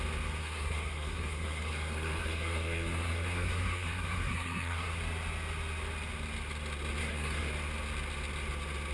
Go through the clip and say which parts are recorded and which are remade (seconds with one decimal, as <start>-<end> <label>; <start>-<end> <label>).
0.0-0.4 recorded; 0.4-4.9 remade; 4.9-7.0 recorded; 7.0-7.5 remade; 7.5-8.9 recorded